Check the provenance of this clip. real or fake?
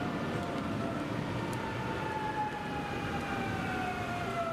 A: real